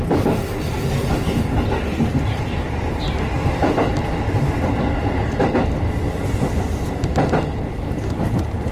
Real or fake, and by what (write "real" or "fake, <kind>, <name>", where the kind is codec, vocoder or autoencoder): real